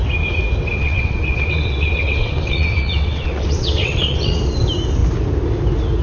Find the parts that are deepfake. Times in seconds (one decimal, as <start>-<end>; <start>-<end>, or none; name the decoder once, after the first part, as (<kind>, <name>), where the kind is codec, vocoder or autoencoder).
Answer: 0.8-4.4 (vocoder, WaveNeXt)